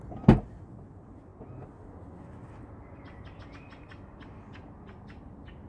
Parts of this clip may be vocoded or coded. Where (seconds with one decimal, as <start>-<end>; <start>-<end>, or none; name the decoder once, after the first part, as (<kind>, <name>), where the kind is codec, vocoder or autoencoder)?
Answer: none